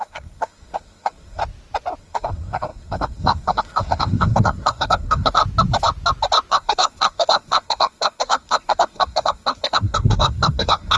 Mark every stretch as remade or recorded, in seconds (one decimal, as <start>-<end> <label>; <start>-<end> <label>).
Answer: 0.0-1.4 remade; 1.4-2.0 recorded; 2.0-5.4 remade; 5.4-6.5 recorded; 6.5-11.0 remade